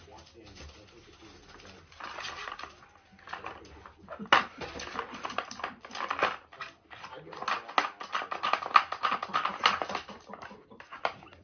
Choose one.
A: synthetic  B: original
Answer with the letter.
B